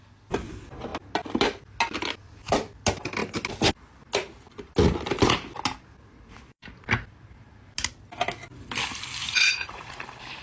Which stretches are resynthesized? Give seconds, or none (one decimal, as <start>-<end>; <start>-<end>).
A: 9.2-10.0